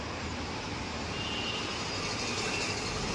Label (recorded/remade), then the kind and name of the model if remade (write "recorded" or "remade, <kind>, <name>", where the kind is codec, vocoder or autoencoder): recorded